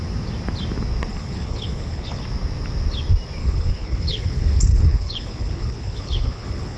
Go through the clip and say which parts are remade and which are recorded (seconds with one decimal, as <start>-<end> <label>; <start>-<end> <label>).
0.0-1.1 recorded; 1.1-2.2 remade; 2.2-3.4 recorded; 3.4-6.8 remade